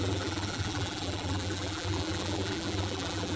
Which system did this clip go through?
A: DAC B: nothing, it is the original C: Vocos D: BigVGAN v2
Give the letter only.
D